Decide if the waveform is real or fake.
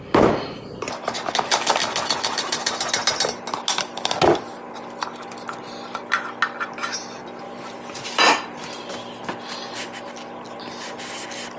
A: real